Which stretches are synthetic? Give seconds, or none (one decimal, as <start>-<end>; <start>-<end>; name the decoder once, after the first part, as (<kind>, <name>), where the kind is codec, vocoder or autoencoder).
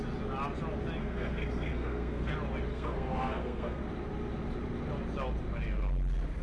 1.0-2.3 (codec, SNAC); 2.7-3.8